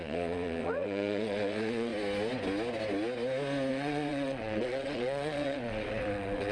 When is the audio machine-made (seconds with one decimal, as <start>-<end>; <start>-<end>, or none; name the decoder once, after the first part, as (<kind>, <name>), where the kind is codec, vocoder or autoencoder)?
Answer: 0.0-1.9 (vocoder, WaveNeXt); 3.7-6.5